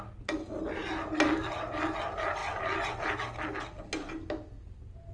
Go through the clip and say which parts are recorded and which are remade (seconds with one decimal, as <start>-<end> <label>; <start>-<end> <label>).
0.0-5.1 recorded